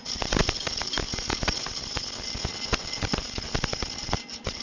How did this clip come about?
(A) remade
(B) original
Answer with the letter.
B